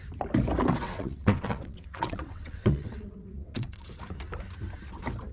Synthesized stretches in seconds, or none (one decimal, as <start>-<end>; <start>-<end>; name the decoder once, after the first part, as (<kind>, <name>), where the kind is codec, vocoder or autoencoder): 0.8-4.0 (vocoder, WaveNeXt)